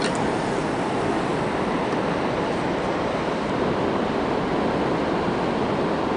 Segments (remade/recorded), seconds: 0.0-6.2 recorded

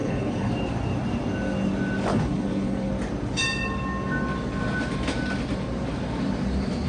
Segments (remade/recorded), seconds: 0.0-0.5 remade; 0.5-2.1 recorded; 2.1-2.9 remade; 2.9-6.9 recorded